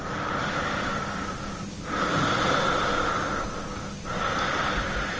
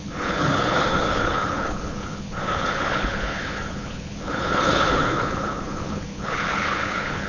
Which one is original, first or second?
first